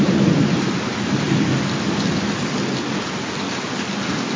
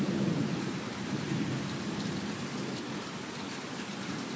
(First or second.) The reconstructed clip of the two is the second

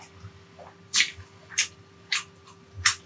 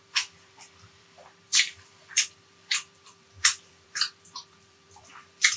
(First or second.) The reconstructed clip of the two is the second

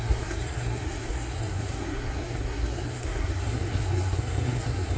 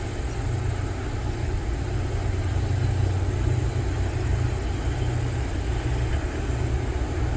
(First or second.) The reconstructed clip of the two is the first